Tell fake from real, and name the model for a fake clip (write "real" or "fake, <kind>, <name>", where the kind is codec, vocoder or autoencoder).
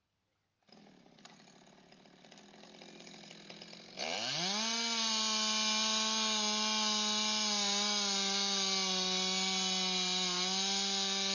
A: real